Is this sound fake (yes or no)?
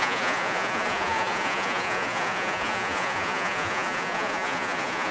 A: yes